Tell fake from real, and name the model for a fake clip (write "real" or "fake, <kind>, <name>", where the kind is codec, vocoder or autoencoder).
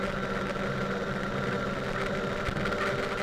real